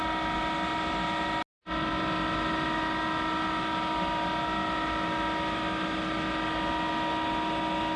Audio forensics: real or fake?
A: real